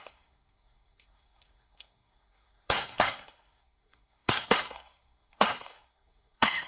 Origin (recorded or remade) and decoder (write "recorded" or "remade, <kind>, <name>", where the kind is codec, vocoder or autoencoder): remade, codec, SNAC